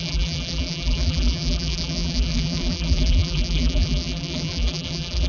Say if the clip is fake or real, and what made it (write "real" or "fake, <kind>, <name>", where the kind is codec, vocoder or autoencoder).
fake, vocoder, BigVGAN v2